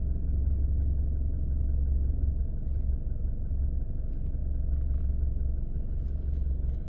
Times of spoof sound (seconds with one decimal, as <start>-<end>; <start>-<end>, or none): none